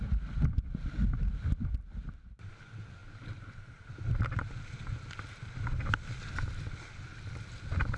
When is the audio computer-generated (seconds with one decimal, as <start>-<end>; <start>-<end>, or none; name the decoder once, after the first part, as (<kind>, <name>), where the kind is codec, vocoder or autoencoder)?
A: 3.0-3.8 (vocoder, BigVGAN v2)